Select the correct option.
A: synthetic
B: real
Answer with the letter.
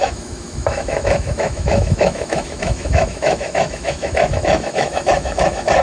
A